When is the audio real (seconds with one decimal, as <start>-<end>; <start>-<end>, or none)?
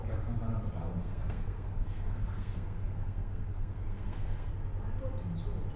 0.0-1.0; 4.5-5.8